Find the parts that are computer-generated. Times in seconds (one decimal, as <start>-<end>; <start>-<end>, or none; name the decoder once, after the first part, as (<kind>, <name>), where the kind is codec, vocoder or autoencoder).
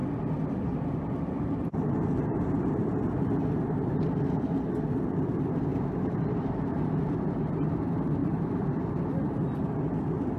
0.0-2.9 (vocoder, BigVGAN v2); 5.7-6.5; 8.2-9.3